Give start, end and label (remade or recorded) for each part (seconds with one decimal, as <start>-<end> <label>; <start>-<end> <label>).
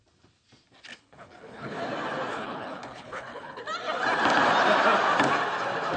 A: 0.0-0.9 recorded; 0.9-1.8 remade; 1.8-2.3 recorded; 2.3-3.6 remade; 3.6-6.0 recorded